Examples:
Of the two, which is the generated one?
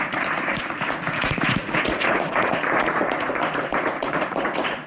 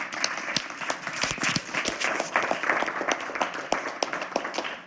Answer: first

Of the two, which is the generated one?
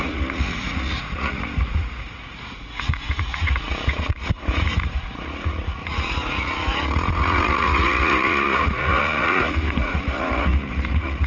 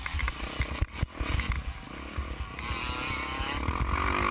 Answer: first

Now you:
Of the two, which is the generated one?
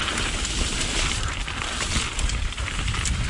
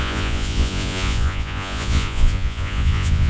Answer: second